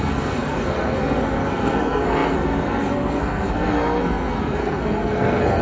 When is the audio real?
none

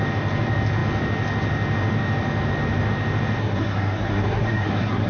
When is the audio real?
0.0-3.4

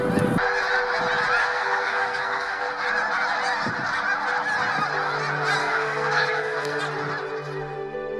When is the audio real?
0.0-1.4; 2.7-5.6; 6.8-8.2

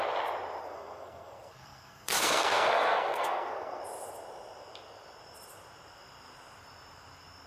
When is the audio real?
0.0-0.6; 3.8-7.5

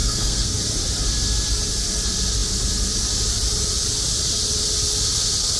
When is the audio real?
0.6-5.6

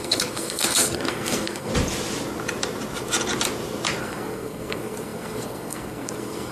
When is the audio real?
1.7-4.0

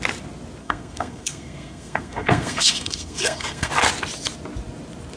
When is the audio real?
0.0-0.6; 3.7-5.2